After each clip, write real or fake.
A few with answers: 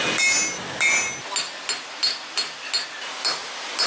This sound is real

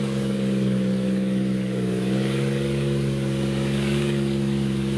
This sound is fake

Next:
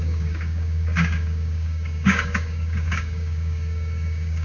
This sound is fake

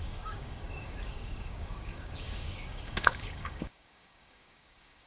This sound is fake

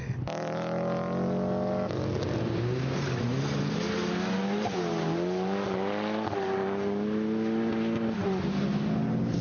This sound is real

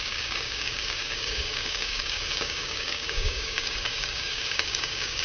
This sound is fake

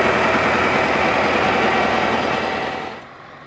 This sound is real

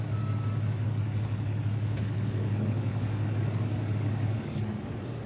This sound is fake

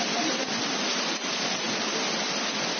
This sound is real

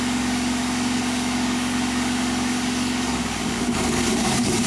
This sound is fake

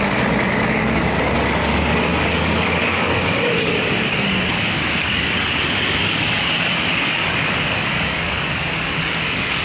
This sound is fake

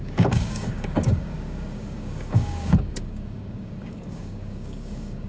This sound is fake